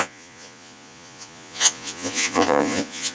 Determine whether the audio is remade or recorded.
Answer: remade